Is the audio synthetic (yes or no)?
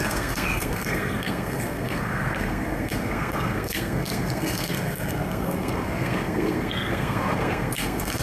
yes